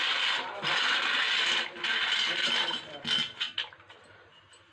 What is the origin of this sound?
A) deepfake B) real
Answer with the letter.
B